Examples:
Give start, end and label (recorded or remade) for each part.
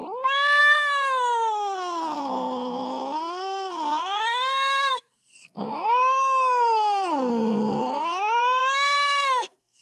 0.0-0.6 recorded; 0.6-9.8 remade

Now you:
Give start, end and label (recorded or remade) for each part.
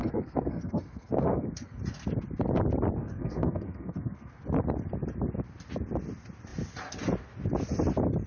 0.0-1.8 remade; 1.8-3.0 recorded; 3.0-4.3 remade; 4.3-8.3 recorded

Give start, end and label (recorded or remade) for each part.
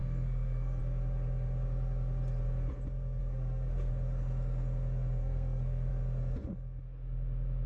0.0-0.8 remade; 0.8-3.2 recorded; 3.2-3.9 remade; 3.9-5.2 recorded; 5.2-5.9 remade; 5.9-7.7 recorded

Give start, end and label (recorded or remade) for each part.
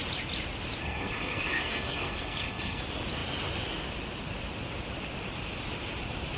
0.0-0.8 recorded; 0.8-2.8 remade; 2.8-6.4 recorded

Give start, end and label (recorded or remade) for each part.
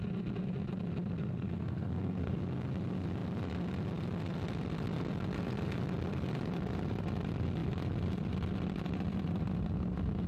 0.0-1.2 recorded; 1.2-2.4 remade; 2.4-10.3 recorded